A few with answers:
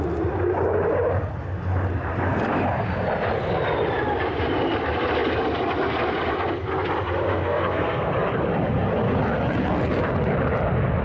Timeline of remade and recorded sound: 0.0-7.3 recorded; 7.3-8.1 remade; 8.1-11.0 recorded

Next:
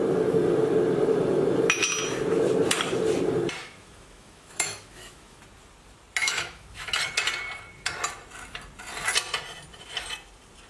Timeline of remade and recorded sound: 0.0-3.6 recorded; 3.6-5.4 remade; 5.4-6.2 recorded; 6.2-6.9 remade; 6.9-10.7 recorded

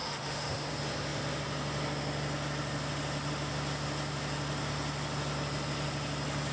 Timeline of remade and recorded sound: 0.0-0.7 remade; 0.7-6.5 recorded

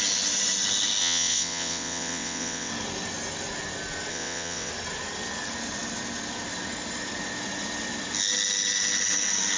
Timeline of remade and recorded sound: 0.0-1.0 recorded; 1.0-2.7 remade; 2.7-4.1 recorded; 4.1-4.7 remade; 4.7-9.6 recorded

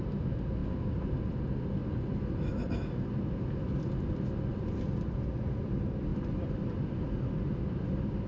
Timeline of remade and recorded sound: 0.0-8.3 recorded

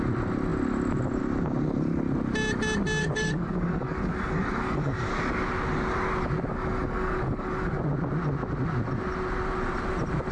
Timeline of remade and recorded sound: 0.0-3.0 recorded; 3.0-5.1 remade; 5.1-6.5 recorded; 6.5-7.8 remade; 7.8-10.3 recorded

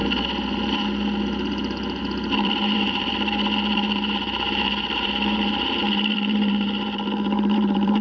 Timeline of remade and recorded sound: 0.0-2.0 recorded; 2.0-8.0 remade